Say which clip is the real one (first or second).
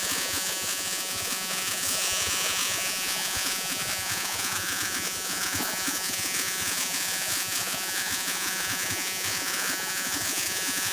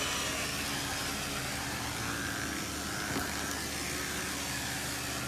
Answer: second